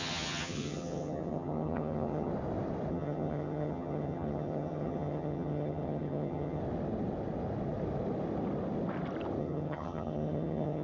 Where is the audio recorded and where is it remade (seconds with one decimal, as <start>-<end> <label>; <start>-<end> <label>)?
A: 0.0-2.3 remade; 2.3-2.9 recorded; 2.9-6.6 remade; 6.6-9.4 recorded; 9.4-10.8 remade